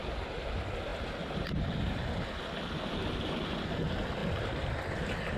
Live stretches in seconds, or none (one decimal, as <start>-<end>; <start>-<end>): 0.0-5.4